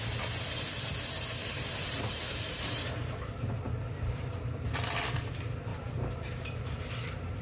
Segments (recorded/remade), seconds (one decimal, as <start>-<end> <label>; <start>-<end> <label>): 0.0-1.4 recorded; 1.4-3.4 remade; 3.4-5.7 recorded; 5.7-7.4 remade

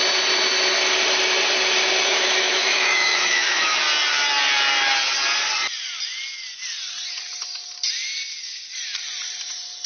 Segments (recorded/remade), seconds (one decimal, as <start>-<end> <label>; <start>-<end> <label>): 0.0-2.1 recorded; 2.1-3.8 remade; 3.8-9.9 recorded

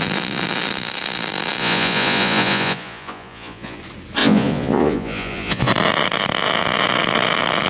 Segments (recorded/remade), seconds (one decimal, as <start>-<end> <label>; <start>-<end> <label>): 0.0-1.6 recorded; 1.6-3.8 remade; 3.8-4.2 recorded; 4.2-5.7 remade; 5.7-7.7 recorded

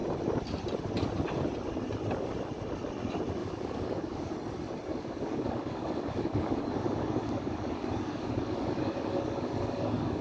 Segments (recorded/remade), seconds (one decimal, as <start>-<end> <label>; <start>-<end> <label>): 0.0-3.4 recorded; 3.4-4.3 remade; 4.3-4.9 recorded; 4.9-10.2 remade

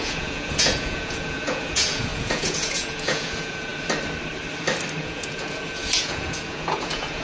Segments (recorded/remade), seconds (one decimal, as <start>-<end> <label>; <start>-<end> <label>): 0.0-3.7 remade; 3.7-5.0 recorded; 5.0-7.2 remade

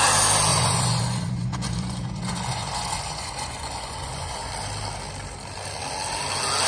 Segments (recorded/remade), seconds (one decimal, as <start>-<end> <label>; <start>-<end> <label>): 0.0-0.5 recorded; 0.5-4.5 remade; 4.5-6.7 recorded